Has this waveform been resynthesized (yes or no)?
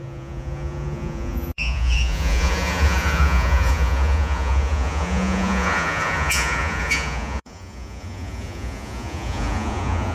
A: yes